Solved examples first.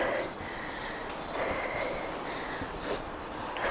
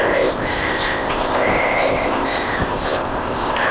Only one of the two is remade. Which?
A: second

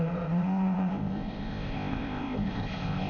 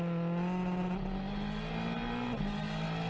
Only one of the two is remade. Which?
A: first